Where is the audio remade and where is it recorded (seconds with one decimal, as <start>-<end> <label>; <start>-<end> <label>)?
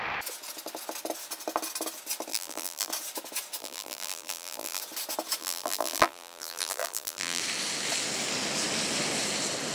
0.0-2.3 recorded; 2.3-2.9 remade; 2.9-3.6 recorded; 3.6-4.8 remade; 4.8-5.4 recorded; 5.4-7.4 remade; 7.4-9.7 recorded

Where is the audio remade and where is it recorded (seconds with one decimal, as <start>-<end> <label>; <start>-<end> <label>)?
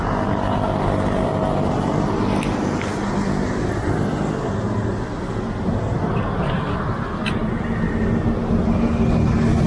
0.0-9.7 recorded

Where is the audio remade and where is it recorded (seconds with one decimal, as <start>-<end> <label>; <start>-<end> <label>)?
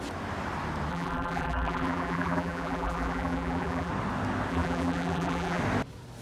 0.0-0.9 recorded; 0.9-3.9 remade; 3.9-4.5 recorded; 4.5-5.6 remade; 5.6-6.2 recorded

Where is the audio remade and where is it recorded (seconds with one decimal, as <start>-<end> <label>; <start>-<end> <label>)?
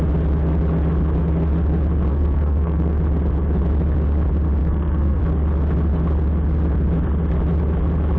0.0-2.1 recorded; 2.1-3.0 remade; 3.0-4.6 recorded; 4.6-5.2 remade; 5.2-8.2 recorded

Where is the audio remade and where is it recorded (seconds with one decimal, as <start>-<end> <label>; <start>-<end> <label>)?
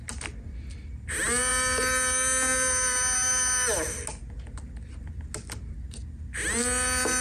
0.0-7.2 recorded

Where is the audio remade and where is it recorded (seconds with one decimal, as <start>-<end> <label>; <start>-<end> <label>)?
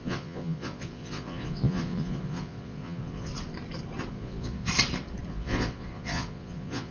0.0-3.3 remade; 3.3-4.1 recorded; 4.1-4.7 remade; 4.7-5.3 recorded; 5.3-6.9 remade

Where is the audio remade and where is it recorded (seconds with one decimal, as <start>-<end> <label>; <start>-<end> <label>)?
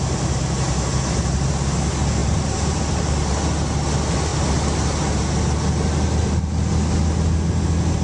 0.0-2.2 recorded; 2.2-3.3 remade; 3.3-8.0 recorded